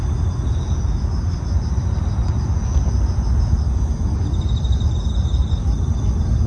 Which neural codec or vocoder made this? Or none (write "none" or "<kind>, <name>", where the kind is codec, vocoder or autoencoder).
none